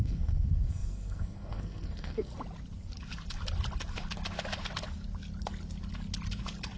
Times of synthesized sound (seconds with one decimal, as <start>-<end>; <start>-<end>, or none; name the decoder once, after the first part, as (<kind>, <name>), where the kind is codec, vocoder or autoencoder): 0.0-2.3 (codec, SNAC)